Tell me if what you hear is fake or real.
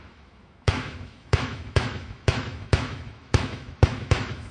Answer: fake